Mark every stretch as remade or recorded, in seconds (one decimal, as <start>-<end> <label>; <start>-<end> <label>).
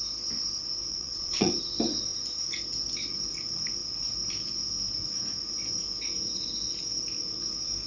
0.0-0.9 recorded; 0.9-1.5 remade; 1.5-7.9 recorded